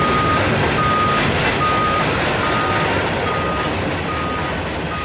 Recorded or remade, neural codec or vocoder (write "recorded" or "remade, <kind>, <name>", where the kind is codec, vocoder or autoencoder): recorded